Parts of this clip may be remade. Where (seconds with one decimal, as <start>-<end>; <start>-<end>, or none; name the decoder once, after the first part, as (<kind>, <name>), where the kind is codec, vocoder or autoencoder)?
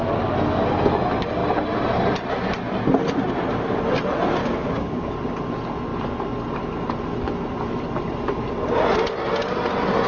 4.4-5.1 (codec, DAC)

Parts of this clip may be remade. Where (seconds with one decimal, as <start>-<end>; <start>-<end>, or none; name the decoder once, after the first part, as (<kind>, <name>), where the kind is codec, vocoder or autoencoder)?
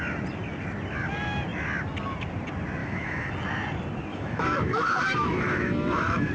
2.8-3.3 (autoencoder, DAC-VAE); 4.1-6.3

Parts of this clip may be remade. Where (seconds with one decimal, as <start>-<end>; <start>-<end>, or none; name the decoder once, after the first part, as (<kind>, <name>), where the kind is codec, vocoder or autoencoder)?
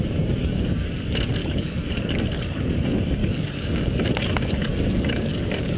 0.4-0.9 (codec, DAC); 1.4-2.7; 3.2-4.1; 4.7-5.8